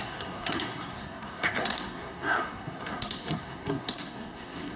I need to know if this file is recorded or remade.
remade